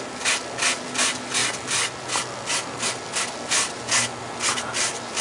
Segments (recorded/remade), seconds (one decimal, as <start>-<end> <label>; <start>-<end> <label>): 0.0-5.2 recorded